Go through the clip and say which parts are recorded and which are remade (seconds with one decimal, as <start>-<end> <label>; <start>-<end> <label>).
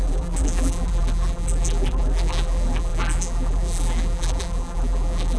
0.0-5.4 remade